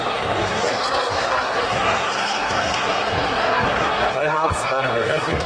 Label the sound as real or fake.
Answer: fake